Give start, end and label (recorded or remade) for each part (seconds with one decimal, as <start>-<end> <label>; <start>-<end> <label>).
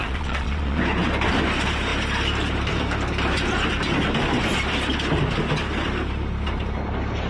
0.0-0.8 remade; 0.8-7.3 recorded